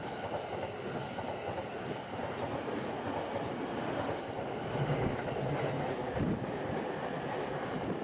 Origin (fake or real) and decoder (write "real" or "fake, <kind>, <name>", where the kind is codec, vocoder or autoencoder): real